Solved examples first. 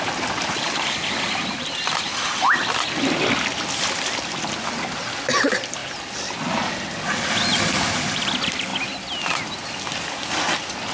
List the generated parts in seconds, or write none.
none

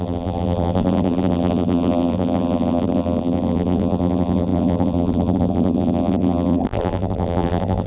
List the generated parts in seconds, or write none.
0.0-7.9

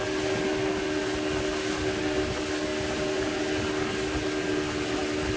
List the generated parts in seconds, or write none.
none

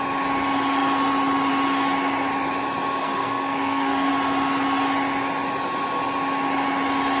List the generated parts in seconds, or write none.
3.0-4.1